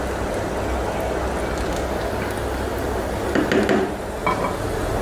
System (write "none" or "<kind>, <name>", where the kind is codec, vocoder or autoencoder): none